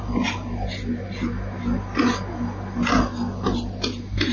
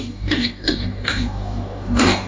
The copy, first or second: second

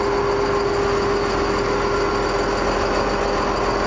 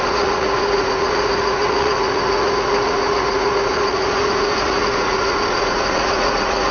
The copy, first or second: second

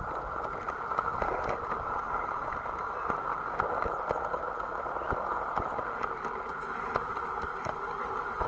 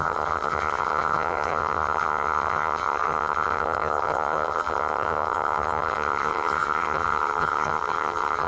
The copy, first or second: second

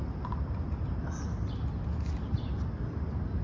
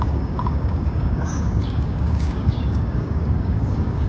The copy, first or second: second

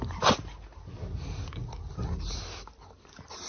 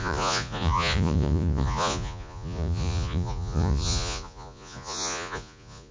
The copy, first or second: second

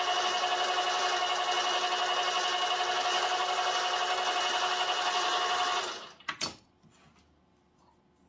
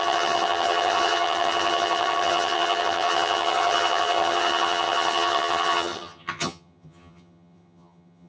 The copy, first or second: second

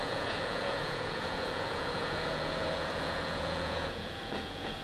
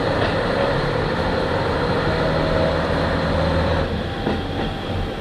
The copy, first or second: first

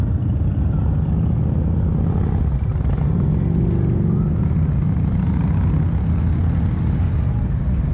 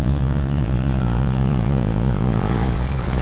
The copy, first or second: second